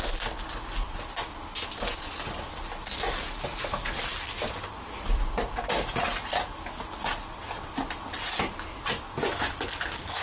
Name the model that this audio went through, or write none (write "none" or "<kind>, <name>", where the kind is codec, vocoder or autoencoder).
none